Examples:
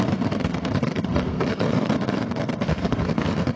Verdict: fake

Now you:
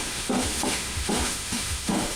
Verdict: fake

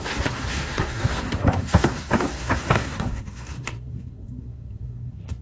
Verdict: fake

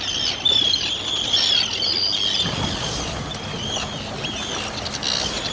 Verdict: real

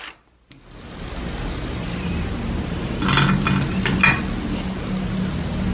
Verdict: real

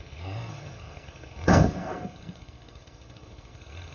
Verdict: fake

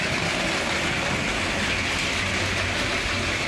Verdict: real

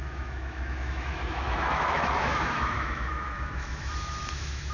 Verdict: fake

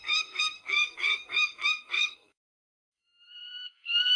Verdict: fake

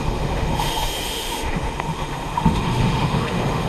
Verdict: fake